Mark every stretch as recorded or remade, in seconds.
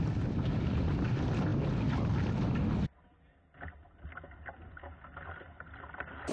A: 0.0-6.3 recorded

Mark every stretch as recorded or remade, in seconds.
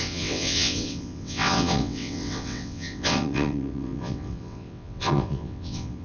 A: 0.0-6.0 remade